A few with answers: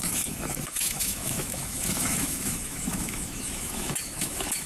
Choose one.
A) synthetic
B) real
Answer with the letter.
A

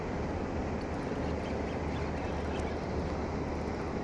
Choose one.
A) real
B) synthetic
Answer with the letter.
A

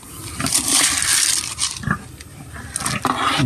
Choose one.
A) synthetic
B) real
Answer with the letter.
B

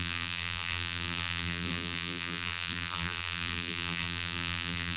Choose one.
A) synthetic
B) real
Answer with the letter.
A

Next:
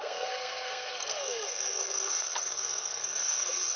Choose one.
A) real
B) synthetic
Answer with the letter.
B